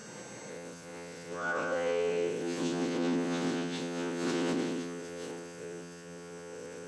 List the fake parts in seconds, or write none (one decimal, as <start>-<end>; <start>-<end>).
0.5-6.9